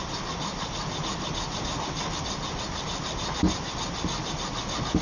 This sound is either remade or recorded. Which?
recorded